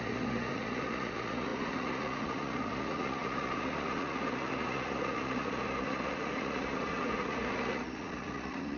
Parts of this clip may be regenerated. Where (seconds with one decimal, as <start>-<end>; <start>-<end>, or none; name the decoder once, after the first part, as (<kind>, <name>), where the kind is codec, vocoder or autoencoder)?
0.0-8.8 (vocoder, Vocos)